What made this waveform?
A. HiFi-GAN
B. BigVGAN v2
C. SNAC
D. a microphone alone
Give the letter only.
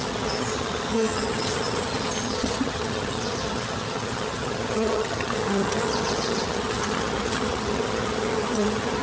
A